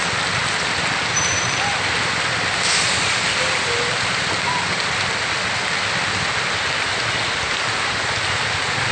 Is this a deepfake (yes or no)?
no